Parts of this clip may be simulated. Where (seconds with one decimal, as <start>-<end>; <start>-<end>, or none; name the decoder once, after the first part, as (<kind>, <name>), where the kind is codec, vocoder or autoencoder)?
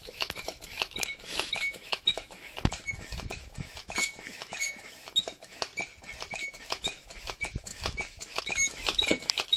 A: 0.0-5.7 (autoencoder, DAC-VAE); 6.3-9.6